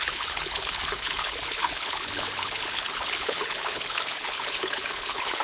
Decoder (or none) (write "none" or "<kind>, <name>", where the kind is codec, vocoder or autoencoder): codec, HILCodec